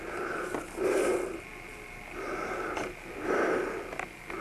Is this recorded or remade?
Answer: recorded